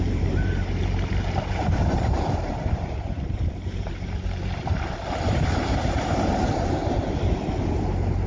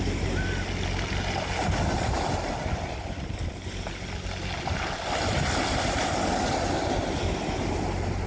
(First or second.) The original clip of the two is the second